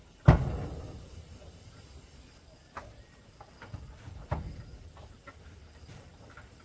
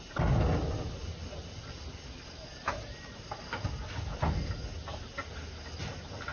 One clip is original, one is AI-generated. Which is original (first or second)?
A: second